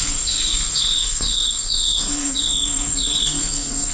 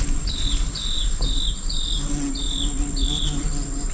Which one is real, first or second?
second